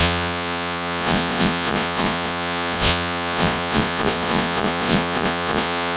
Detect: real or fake fake